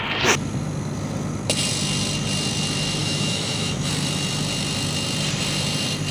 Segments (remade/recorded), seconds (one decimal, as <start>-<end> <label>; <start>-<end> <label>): 0.0-3.0 recorded; 3.0-3.9 remade; 3.9-6.1 recorded